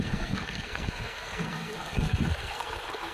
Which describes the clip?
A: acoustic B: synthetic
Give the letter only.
B